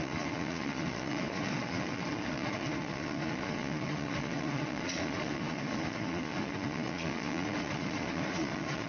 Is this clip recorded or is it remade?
remade